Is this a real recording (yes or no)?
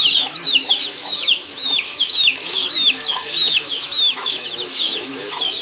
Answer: no